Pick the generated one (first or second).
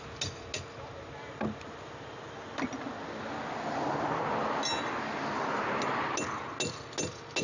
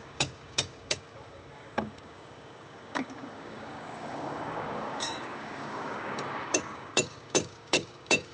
second